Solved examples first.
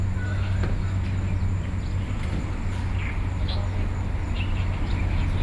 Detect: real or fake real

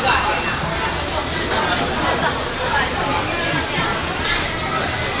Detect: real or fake real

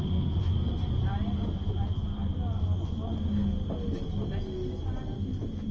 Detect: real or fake real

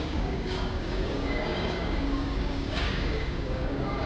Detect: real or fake fake